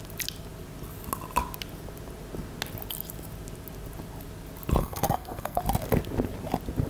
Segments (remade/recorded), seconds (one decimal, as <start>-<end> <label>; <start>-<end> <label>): 0.0-4.8 recorded; 4.8-5.6 remade; 5.6-6.9 recorded